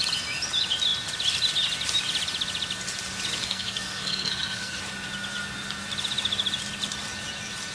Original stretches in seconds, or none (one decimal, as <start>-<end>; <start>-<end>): 0.0-3.4; 4.8-7.7

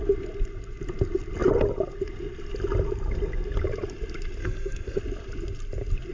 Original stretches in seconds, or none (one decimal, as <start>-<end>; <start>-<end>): 0.0-4.4; 5.0-6.1

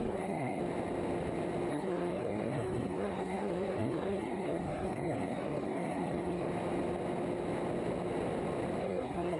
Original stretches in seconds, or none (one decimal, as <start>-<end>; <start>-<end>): 0.6-1.7; 6.5-8.8

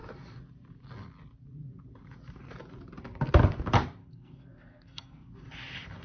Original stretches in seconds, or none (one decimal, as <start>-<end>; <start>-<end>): 0.0-4.0; 5.3-6.0

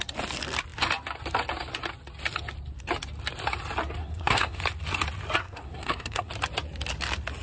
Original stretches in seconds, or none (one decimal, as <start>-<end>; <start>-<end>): 0.0-4.0; 4.6-5.4; 6.3-7.4